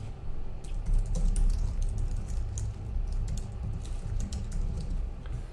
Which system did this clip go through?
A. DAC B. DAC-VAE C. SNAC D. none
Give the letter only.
D